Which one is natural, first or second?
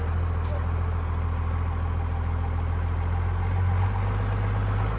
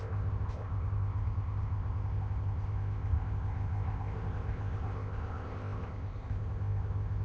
first